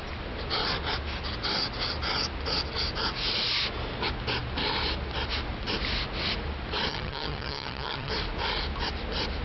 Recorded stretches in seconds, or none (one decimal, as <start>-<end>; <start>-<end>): 0.0-6.9; 8.1-9.4